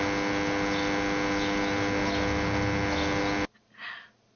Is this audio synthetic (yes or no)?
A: no